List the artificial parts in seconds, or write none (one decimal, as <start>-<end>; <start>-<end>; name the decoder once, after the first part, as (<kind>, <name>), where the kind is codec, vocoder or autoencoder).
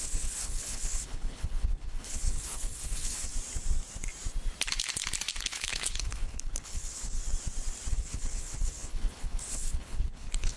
0.0-3.3 (codec, HILCodec); 5.4-7.2; 7.9-10.6